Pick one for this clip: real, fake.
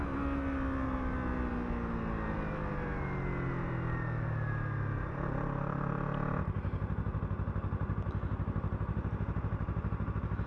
real